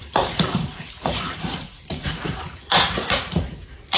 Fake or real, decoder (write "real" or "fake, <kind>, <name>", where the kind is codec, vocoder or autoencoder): fake, vocoder, Vocos